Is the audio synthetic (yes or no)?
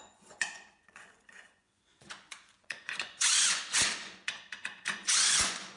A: yes